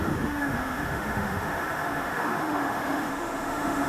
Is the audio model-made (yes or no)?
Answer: yes